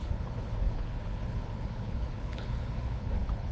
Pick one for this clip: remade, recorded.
remade